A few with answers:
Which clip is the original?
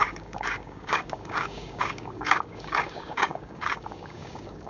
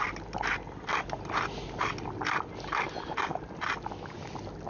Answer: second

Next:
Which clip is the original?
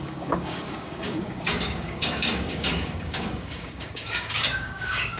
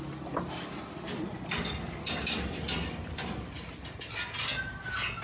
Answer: second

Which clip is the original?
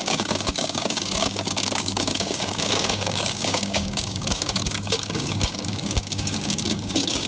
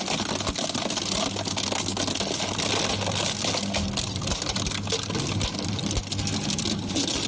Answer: second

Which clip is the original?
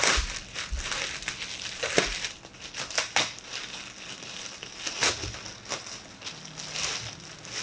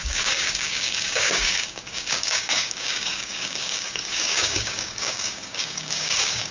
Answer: first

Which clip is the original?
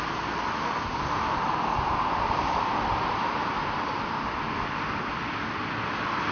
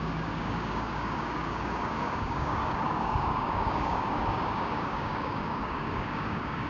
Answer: first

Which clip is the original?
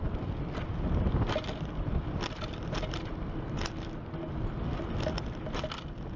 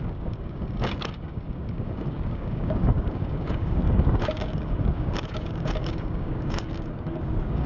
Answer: first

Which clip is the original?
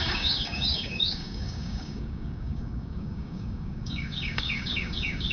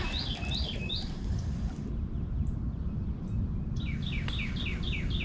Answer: second